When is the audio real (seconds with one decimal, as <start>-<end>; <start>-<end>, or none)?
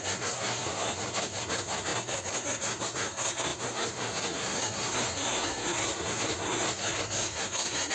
none